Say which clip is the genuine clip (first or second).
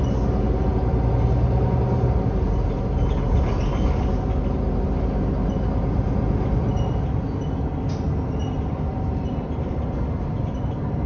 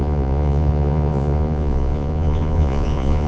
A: first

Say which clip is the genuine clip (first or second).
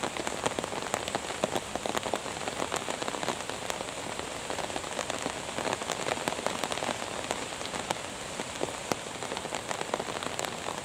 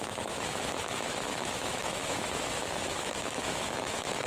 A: first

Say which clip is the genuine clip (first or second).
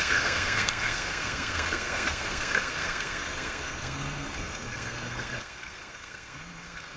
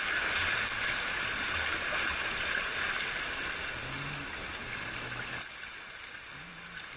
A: second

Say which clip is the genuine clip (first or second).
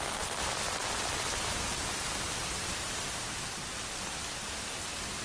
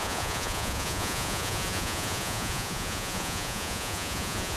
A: first